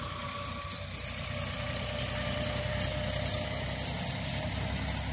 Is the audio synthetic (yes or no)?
no